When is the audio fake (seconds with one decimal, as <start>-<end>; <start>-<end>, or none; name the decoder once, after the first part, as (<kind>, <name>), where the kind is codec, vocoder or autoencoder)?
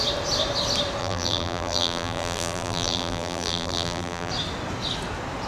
1.0-4.3 (vocoder, BigVGAN v2)